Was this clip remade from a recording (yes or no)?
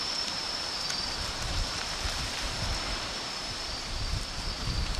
yes